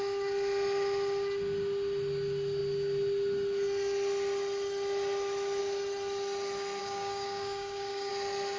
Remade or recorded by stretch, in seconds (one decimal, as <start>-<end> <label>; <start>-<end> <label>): 0.0-6.8 recorded; 6.8-8.1 remade; 8.1-8.6 recorded